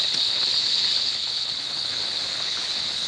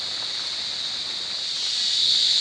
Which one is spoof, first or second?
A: first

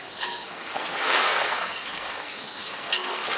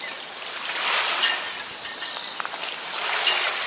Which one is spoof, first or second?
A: first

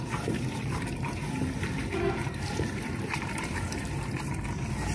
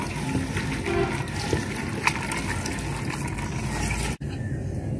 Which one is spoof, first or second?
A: first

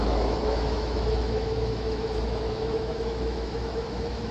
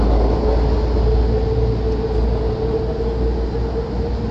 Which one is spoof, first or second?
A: first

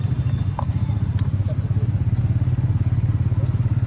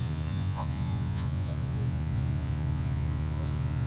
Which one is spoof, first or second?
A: second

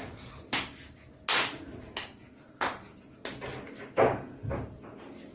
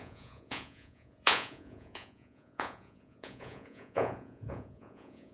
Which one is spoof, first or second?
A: second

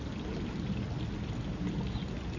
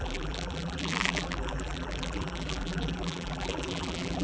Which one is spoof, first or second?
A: second